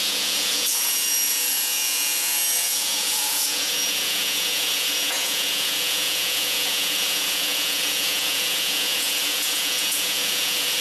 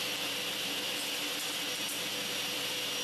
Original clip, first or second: second